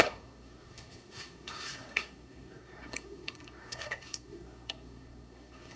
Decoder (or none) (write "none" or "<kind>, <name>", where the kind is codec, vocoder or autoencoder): codec, SNAC